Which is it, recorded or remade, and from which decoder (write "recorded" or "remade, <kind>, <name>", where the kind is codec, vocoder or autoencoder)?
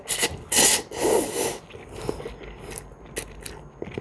recorded